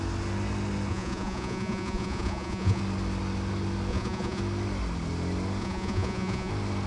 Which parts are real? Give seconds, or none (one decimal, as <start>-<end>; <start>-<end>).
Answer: 0.0-0.9; 2.8-3.9; 4.4-5.6; 6.5-6.9